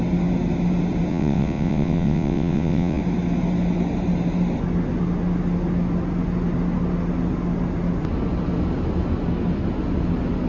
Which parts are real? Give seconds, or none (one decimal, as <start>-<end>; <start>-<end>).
0.0-1.1; 3.0-10.5

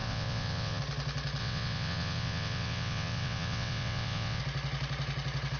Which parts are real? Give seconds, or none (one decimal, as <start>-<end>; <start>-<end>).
0.8-1.4; 4.4-5.6

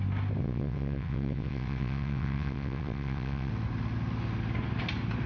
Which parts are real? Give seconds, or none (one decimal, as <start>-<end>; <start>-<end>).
0.0-0.4; 3.5-5.3